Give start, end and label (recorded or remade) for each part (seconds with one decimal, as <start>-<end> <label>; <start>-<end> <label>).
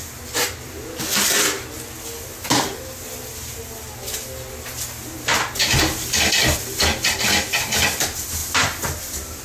0.0-9.4 recorded